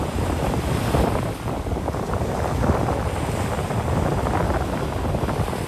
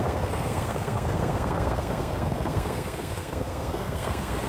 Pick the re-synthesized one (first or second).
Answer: second